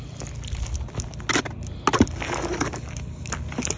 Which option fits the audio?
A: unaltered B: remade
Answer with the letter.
A